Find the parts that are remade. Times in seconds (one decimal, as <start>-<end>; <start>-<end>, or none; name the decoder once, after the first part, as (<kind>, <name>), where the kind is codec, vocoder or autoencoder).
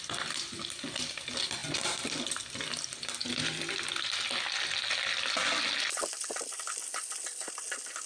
none